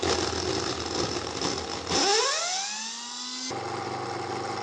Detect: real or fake real